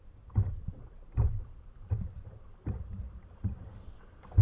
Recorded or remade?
recorded